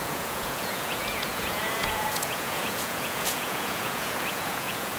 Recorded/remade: remade